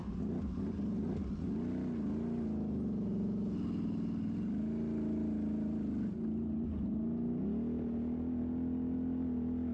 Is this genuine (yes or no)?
yes